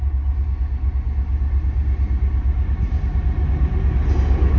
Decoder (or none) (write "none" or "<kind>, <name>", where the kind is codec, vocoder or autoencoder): none